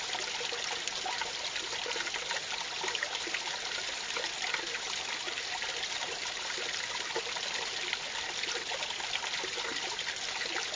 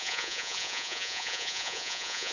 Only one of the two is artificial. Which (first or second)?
second